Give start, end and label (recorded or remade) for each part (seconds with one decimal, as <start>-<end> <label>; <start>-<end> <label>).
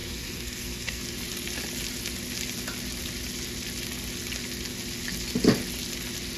0.0-1.0 remade; 1.0-6.4 recorded